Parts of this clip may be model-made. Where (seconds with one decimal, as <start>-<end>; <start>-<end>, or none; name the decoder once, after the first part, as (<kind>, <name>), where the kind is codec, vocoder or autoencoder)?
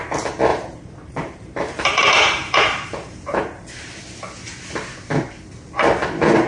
0.5-4.0 (vocoder, BigVGAN v2)